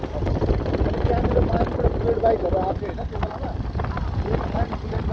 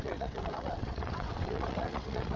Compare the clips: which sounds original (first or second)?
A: first